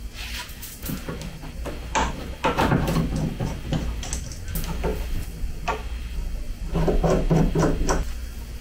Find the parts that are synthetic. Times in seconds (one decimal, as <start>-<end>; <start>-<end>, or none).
none